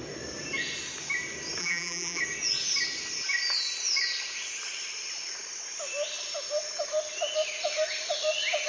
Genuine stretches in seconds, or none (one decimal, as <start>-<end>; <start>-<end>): 0.0-1.6; 2.2-8.7